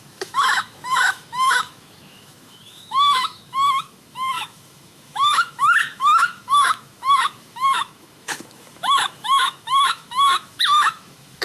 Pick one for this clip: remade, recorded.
remade